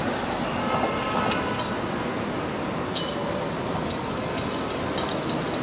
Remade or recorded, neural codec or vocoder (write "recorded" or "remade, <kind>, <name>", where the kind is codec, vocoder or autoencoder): recorded